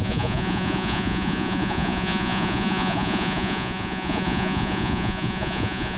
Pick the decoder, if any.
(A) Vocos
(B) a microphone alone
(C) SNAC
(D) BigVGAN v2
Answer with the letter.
A